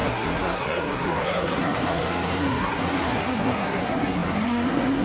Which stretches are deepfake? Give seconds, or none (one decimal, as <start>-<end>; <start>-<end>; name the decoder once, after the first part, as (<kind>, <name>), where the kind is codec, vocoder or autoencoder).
0.0-5.0 (codec, SNAC)